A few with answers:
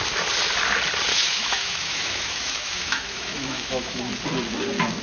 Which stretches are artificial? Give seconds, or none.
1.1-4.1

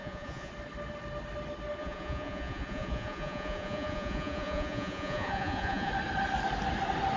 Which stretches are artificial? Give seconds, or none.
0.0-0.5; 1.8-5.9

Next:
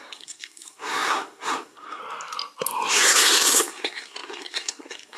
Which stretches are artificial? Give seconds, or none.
0.0-2.0; 2.9-5.2